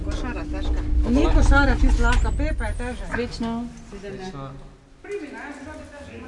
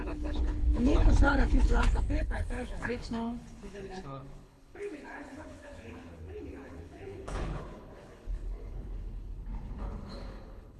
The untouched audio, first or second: first